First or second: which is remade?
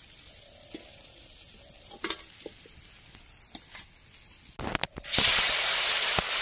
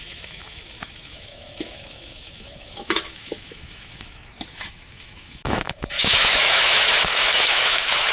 second